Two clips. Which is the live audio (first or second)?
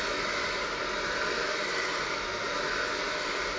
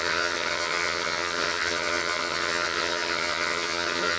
first